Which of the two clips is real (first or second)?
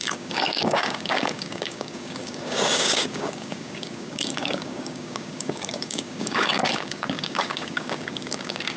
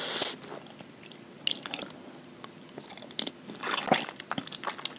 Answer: second